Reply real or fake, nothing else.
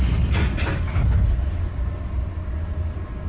real